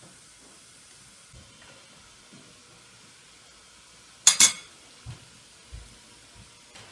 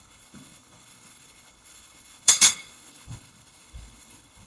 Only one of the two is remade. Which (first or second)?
second